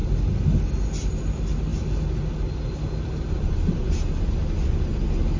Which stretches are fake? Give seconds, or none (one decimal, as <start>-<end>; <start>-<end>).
none